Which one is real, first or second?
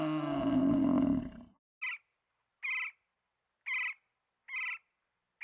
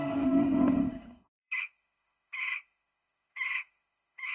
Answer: first